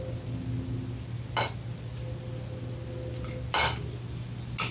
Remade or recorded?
recorded